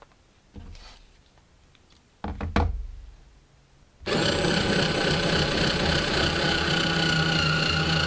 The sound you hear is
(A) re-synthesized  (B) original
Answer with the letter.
B